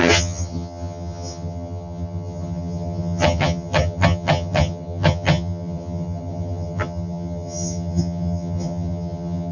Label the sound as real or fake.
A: fake